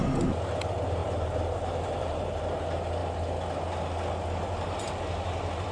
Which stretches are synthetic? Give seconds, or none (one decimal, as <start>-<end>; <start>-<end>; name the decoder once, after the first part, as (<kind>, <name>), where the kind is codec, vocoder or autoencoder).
1.0-2.4 (vocoder, BigVGAN v2)